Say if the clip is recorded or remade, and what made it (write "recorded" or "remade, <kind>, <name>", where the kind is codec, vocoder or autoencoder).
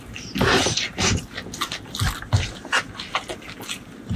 recorded